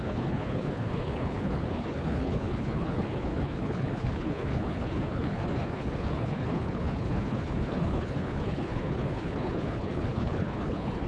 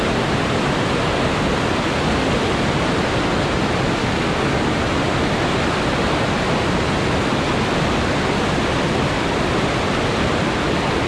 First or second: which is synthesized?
first